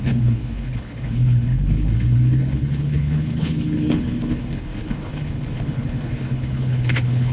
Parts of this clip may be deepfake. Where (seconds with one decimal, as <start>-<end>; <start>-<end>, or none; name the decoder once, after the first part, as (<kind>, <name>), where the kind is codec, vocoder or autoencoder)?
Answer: 0.0-7.3 (codec, HILCodec)